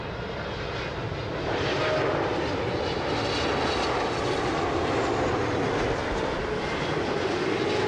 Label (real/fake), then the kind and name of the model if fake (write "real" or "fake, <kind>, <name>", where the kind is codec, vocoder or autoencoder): real